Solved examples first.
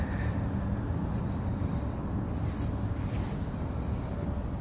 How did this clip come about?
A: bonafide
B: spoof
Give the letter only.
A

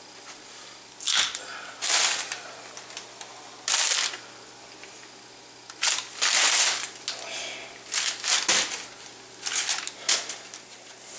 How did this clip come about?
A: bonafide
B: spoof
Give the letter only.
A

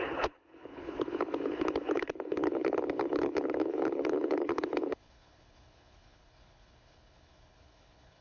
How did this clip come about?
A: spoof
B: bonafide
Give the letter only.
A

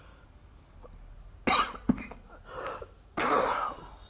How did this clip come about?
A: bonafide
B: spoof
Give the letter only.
A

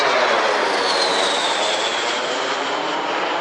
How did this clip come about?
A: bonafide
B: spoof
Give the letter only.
A